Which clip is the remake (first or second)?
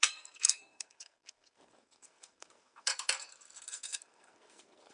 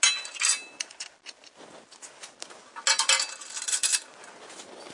first